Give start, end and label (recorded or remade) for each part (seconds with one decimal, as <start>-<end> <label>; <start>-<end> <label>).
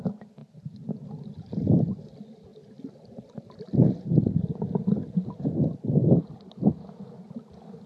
0.0-0.4 recorded; 0.4-1.5 remade; 1.5-7.9 recorded